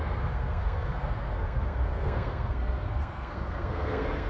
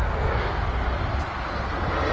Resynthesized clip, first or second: first